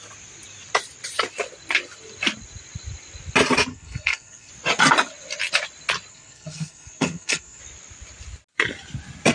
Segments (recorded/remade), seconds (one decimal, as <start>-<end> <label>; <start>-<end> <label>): 0.0-3.7 recorded; 3.7-4.5 remade; 4.5-6.1 recorded; 6.1-7.6 remade; 7.6-9.3 recorded